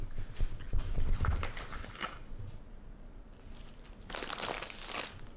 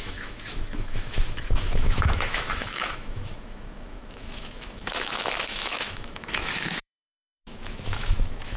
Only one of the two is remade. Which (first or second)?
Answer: second